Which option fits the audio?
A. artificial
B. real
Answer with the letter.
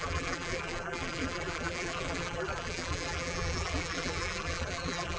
A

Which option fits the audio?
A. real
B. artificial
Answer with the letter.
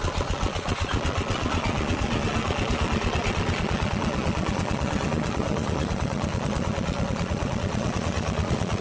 B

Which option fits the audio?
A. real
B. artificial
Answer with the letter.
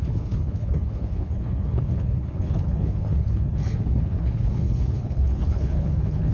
B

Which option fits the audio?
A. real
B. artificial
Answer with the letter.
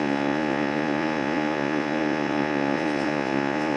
B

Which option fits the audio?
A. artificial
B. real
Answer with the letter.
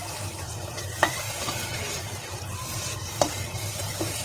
A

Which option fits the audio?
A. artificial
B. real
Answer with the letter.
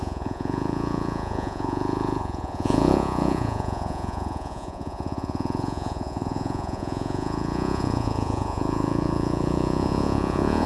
A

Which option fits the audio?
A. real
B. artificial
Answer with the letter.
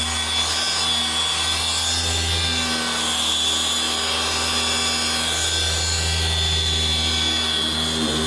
A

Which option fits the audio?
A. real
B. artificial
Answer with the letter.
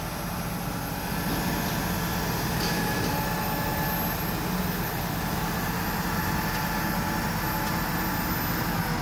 A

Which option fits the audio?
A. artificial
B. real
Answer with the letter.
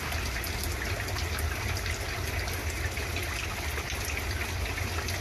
B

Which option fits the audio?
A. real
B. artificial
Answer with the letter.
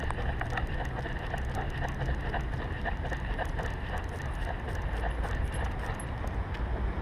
A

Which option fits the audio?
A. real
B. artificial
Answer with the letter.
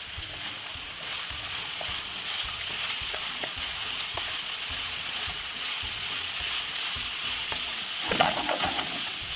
B